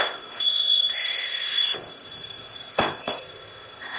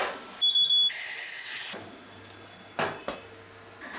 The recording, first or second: second